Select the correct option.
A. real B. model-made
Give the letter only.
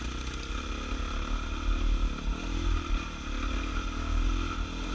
A